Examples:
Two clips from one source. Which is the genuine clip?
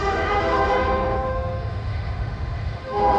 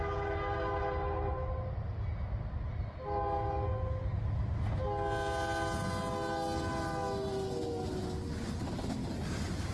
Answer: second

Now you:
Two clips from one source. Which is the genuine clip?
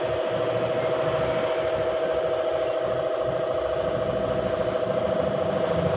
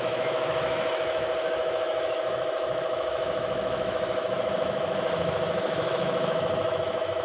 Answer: first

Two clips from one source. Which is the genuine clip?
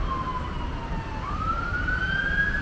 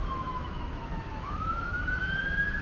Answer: first